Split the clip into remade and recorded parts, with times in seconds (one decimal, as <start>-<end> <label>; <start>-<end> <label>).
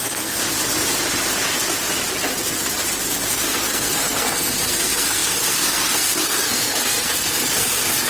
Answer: 0.0-0.4 remade; 0.4-3.3 recorded; 3.3-8.1 remade